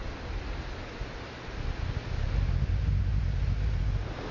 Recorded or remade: recorded